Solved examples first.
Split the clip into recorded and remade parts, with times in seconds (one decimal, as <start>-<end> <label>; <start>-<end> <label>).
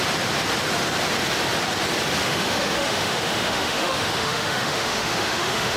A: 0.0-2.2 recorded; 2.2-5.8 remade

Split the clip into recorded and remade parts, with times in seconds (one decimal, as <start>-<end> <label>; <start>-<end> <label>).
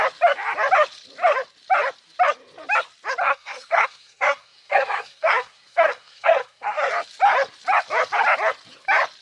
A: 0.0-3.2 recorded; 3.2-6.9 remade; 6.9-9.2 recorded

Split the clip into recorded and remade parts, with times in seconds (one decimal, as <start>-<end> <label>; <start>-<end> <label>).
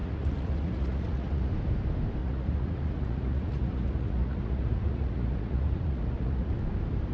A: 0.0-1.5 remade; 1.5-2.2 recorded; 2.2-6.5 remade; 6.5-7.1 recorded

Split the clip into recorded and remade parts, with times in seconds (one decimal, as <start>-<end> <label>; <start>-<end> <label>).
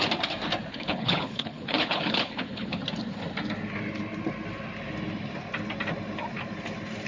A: 0.0-0.7 recorded; 0.7-2.8 remade; 2.8-7.1 recorded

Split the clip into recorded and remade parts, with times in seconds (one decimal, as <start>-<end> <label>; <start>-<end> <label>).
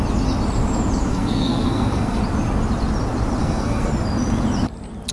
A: 0.0-1.1 recorded; 1.1-2.2 remade; 2.2-3.4 recorded; 3.4-3.9 remade; 3.9-5.1 recorded